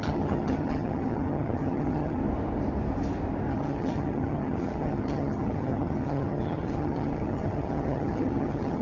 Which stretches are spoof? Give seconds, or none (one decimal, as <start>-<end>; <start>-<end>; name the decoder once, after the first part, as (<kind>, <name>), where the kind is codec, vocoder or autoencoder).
0.0-2.2 (vocoder, HiFi-GAN); 3.5-8.8